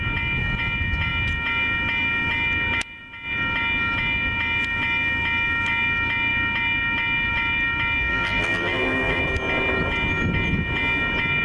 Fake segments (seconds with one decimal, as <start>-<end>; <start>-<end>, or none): 8.1-9.2